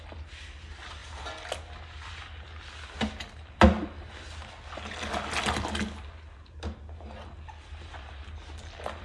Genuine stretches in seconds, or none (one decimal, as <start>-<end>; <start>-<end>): 0.0-9.0